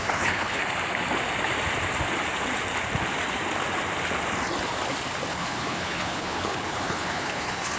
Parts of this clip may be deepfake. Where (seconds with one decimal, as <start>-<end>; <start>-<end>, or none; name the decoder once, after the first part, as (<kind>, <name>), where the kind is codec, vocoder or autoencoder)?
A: 0.0-0.6 (codec, HILCodec); 5.3-7.8